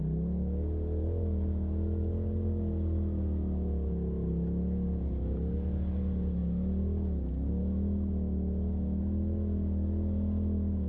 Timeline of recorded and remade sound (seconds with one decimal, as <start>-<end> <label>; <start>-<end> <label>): 0.0-10.9 recorded